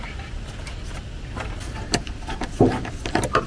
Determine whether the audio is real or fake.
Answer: real